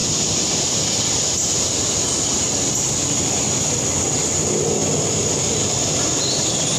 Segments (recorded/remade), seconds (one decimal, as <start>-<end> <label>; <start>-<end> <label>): 0.0-6.8 recorded